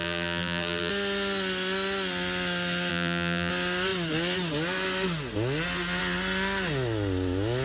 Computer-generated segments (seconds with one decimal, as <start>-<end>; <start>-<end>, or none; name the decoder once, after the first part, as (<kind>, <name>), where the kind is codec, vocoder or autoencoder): 0.0-0.9 (vocoder, BigVGAN v2); 2.9-3.5